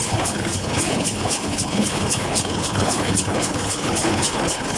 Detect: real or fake fake